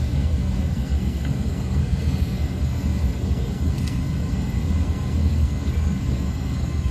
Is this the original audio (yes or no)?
no